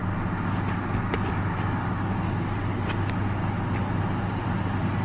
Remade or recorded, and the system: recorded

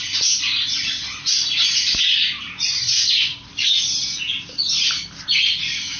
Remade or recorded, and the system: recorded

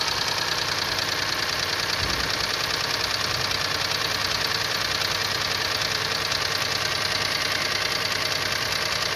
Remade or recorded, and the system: recorded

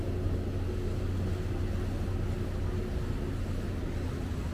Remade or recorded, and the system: recorded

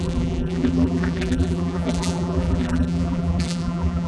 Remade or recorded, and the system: remade, vocoder, BigVGAN v2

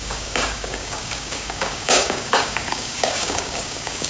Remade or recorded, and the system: remade, codec, DAC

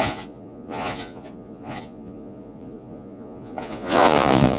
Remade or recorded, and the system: remade, vocoder, Vocos